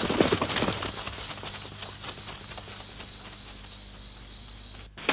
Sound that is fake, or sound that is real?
real